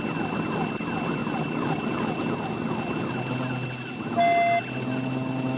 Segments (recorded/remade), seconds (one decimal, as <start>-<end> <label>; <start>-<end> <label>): 0.0-5.6 recorded